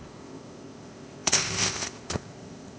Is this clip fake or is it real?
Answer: fake